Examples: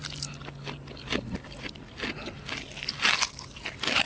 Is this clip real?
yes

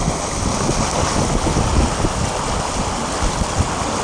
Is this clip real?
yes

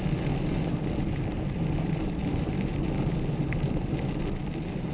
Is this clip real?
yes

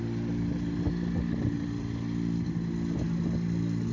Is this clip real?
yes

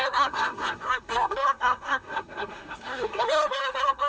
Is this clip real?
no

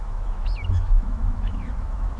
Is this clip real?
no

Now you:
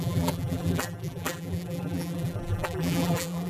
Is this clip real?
no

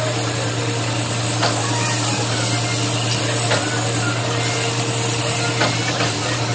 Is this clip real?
yes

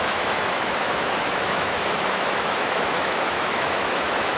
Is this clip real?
no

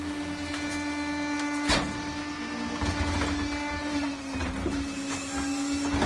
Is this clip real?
yes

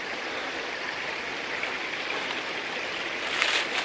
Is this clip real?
yes